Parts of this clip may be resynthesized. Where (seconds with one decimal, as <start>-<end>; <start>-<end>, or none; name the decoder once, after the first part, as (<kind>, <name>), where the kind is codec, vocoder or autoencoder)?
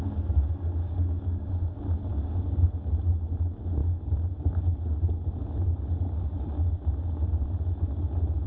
0.8-1.5 (codec, DAC); 2.1-2.7